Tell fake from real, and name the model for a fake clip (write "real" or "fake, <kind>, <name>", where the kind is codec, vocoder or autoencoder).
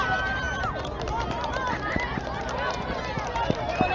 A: real